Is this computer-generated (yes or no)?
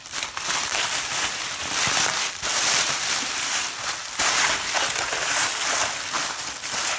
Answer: yes